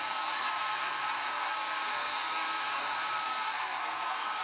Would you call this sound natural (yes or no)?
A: no